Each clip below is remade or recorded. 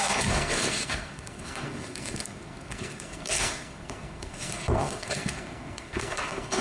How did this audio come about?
remade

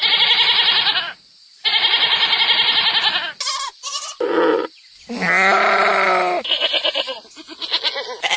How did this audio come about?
recorded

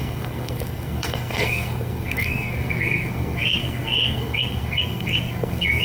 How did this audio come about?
remade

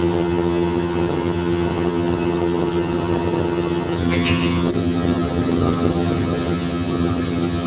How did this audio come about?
remade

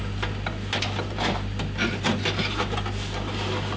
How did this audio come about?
recorded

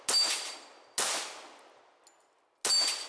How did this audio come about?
recorded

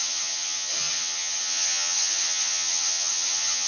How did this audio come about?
remade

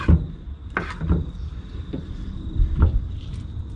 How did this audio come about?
recorded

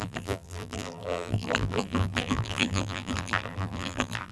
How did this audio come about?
remade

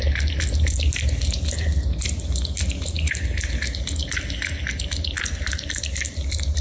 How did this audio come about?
recorded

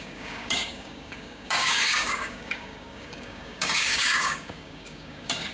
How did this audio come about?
remade